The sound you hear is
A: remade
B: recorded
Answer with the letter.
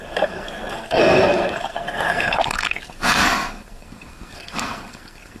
A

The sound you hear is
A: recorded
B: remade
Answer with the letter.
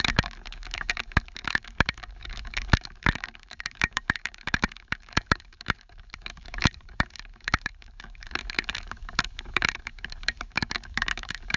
B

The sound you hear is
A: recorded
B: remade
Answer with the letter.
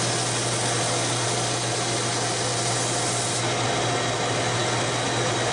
A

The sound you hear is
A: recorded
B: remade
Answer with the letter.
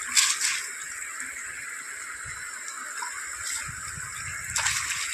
A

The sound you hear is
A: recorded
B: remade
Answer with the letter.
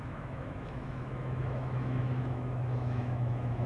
B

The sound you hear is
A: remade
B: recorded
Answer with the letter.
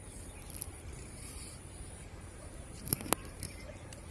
A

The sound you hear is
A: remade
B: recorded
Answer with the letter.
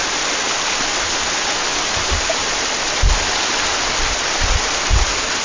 B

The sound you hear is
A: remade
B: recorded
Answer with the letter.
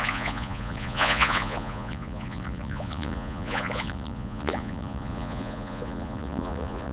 A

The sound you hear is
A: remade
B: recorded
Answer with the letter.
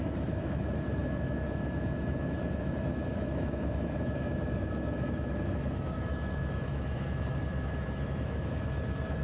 A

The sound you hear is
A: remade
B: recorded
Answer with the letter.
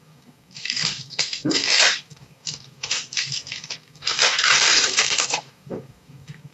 A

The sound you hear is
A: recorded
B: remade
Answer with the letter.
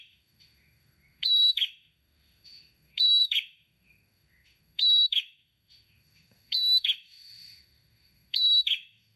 B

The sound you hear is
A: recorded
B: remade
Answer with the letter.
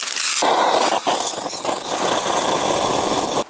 A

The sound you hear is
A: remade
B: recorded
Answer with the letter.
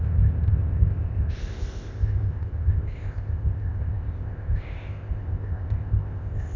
A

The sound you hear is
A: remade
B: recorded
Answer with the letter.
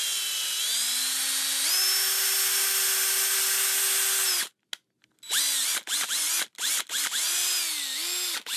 B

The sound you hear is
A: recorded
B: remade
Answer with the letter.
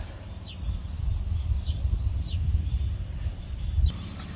A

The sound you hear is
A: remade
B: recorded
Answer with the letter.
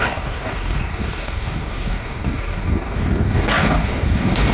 A